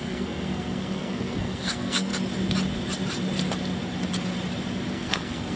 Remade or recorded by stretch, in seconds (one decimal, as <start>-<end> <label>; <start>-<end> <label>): 0.0-2.1 remade; 2.1-4.9 recorded; 4.9-5.6 remade